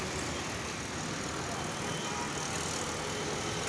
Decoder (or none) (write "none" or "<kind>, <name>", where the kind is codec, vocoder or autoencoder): none